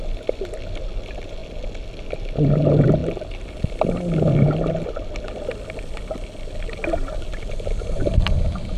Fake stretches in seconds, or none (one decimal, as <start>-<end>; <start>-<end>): none

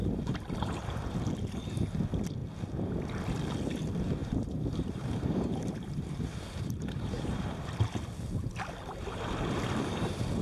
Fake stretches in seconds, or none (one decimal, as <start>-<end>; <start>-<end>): 0.0-1.3; 4.2-7.7

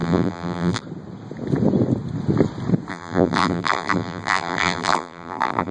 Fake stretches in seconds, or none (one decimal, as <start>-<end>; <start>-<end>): 0.0-0.8; 2.9-5.7